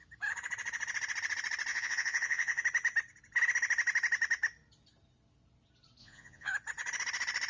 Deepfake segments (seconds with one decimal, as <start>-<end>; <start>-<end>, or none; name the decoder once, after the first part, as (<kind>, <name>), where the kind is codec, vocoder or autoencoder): 1.7-2.6 (vocoder, Vocos); 6.0-6.5